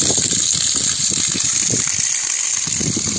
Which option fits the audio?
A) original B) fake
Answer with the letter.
A